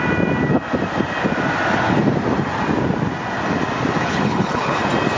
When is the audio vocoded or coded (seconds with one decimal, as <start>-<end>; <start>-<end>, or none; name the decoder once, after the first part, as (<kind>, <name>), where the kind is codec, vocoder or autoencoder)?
4.0-4.8 (codec, HILCodec)